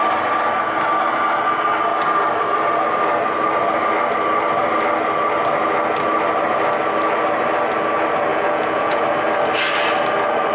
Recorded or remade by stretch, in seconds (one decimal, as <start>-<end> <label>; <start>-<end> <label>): 0.0-8.3 recorded; 8.3-9.0 remade; 9.0-10.5 recorded